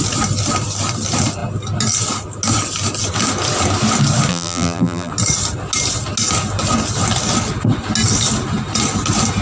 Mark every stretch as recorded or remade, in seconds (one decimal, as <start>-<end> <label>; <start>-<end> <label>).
0.0-4.3 recorded; 4.3-5.1 remade; 5.1-9.4 recorded